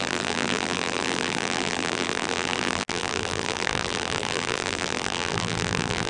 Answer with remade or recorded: remade